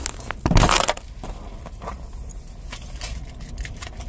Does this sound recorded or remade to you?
recorded